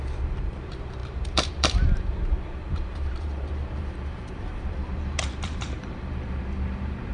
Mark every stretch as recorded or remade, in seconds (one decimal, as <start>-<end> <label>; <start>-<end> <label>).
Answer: 0.0-7.1 remade